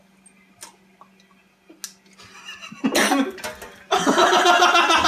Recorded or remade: recorded